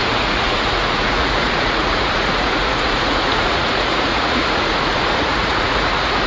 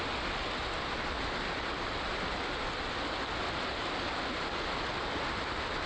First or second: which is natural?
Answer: second